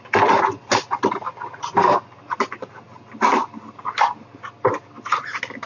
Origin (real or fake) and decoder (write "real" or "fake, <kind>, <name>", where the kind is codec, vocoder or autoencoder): real